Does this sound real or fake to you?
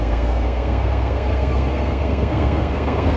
fake